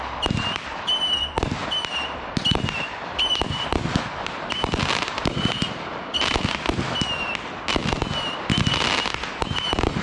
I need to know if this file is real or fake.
real